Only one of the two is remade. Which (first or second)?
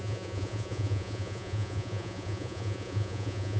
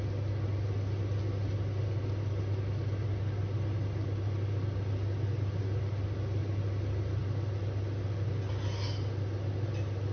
first